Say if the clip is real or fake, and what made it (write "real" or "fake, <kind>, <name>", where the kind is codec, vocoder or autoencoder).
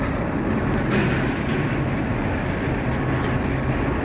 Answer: real